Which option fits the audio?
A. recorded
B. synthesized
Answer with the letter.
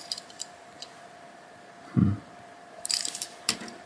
B